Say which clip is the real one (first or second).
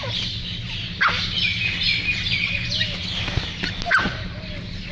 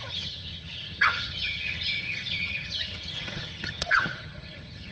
first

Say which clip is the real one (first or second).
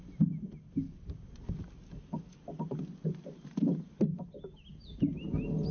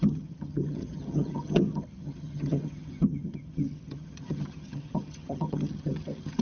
first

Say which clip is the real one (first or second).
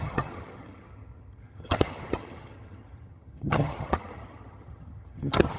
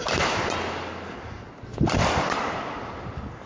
second